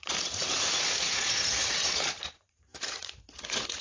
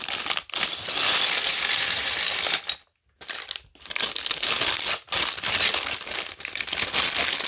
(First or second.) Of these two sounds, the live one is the second